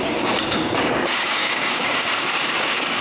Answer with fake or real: fake